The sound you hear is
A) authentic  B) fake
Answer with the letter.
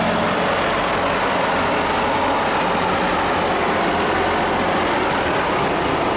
A